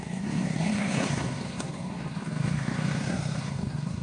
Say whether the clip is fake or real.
fake